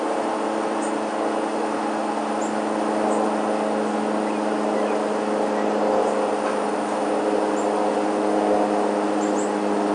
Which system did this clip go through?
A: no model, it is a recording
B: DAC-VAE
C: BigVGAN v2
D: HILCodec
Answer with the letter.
A